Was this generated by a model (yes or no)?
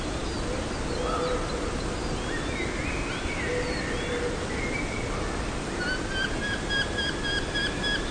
no